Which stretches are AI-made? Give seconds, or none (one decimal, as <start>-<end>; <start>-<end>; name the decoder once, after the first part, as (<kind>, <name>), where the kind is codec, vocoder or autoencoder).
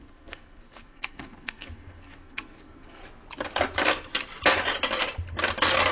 0.0-3.0 (codec, SNAC)